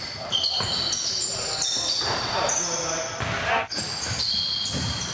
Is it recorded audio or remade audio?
recorded